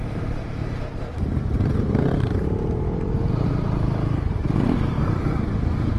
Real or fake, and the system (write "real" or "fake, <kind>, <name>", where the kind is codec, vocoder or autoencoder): fake, vocoder, BigVGAN v2